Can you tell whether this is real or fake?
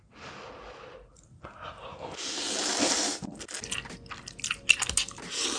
real